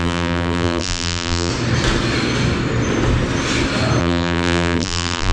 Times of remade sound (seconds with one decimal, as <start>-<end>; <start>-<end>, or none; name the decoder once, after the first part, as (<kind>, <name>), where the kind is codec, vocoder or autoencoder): 0.0-1.5 (vocoder, BigVGAN v2); 4.0-5.3